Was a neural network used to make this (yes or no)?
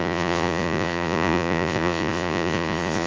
yes